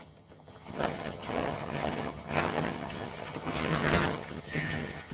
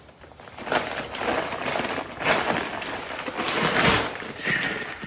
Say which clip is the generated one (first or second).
first